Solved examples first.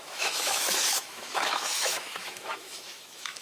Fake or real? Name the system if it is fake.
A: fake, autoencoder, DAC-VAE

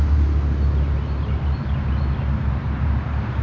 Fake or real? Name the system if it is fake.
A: real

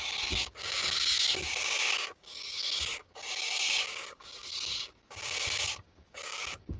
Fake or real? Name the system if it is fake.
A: fake, codec, DAC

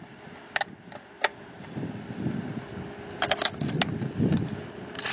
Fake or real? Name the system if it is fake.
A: real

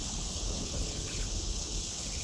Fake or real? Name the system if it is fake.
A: fake, codec, HILCodec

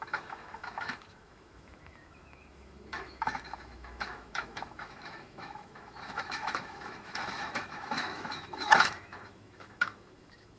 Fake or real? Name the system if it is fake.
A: fake, autoencoder, DAC-VAE